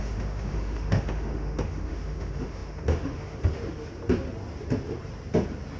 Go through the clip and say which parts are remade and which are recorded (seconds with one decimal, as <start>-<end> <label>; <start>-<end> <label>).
0.0-3.6 remade; 3.6-5.8 recorded

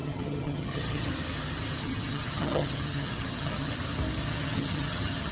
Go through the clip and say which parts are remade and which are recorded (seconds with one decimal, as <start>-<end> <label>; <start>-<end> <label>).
0.0-1.1 remade; 1.1-1.8 recorded; 1.8-3.7 remade; 3.7-4.2 recorded; 4.2-5.3 remade

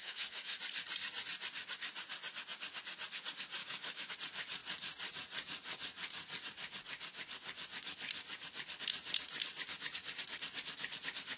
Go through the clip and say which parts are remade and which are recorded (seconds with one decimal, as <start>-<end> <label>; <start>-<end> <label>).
0.0-0.6 remade; 0.6-3.6 recorded; 3.6-4.1 remade; 4.1-11.4 recorded

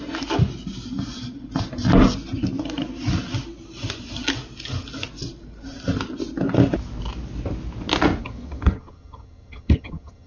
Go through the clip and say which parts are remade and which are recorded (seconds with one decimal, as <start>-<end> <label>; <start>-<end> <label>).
0.0-8.2 recorded; 8.2-10.3 remade

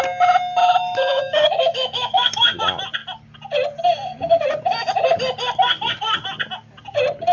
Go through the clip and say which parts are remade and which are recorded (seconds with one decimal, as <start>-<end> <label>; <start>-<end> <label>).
0.0-0.6 recorded; 0.6-2.6 remade; 2.6-7.3 recorded

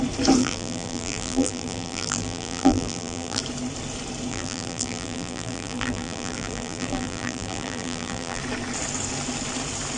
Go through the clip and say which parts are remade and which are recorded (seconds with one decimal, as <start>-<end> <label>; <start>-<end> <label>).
0.0-0.4 recorded; 0.4-3.4 remade; 3.4-4.3 recorded; 4.3-8.4 remade; 8.4-10.0 recorded

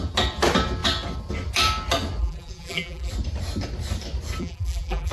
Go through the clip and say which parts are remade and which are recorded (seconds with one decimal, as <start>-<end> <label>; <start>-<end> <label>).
0.0-2.2 recorded; 2.2-3.1 remade; 3.1-4.4 recorded; 4.4-5.1 remade

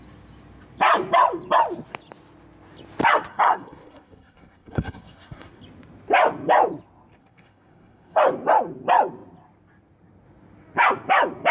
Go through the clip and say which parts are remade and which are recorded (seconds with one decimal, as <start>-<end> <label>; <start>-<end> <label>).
0.0-3.3 recorded; 3.3-5.6 remade; 5.6-7.2 recorded; 7.2-8.2 remade; 8.2-11.5 recorded